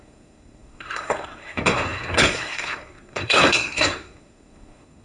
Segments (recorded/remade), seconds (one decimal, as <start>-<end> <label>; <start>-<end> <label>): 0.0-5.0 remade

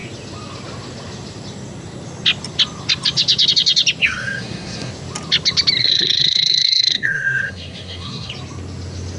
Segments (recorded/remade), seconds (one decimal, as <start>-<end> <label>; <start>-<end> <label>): 0.0-4.0 recorded; 4.0-4.9 remade; 4.9-5.8 recorded; 5.8-8.3 remade; 8.3-9.2 recorded

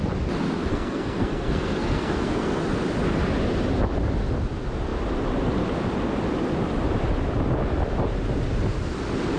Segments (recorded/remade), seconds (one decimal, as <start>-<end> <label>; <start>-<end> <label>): 0.0-0.7 recorded; 0.7-2.6 remade; 2.6-9.4 recorded